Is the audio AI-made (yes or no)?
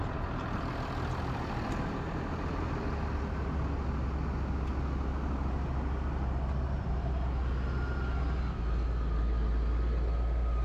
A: no